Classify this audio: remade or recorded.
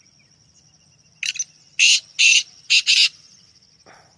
recorded